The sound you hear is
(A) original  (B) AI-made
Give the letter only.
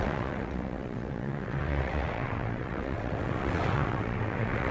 B